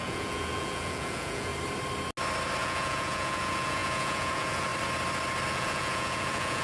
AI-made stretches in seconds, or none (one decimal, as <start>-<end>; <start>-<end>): 0.0-1.5; 2.6-4.7; 5.5-6.6